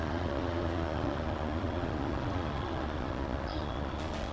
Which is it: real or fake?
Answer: fake